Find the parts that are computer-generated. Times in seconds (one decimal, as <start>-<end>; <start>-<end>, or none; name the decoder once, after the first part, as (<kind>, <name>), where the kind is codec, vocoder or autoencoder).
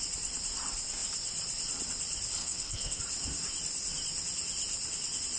2.4-3.0 (codec, SNAC)